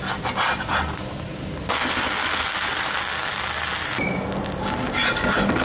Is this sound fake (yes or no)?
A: no